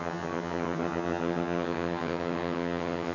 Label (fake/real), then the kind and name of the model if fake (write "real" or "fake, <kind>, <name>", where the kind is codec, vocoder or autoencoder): fake, vocoder, HiFi-GAN